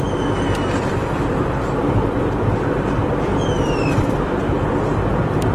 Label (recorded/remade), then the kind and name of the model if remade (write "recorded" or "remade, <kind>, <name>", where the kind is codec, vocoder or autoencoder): remade, vocoder, BigVGAN v2